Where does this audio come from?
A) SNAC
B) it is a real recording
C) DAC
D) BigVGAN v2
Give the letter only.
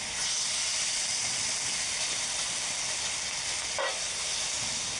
B